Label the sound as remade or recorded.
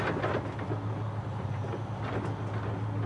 recorded